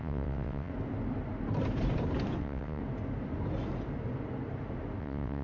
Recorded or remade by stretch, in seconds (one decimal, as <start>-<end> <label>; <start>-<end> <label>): 0.0-0.7 remade; 0.7-2.4 recorded; 2.4-2.8 remade; 2.8-5.0 recorded; 5.0-5.4 remade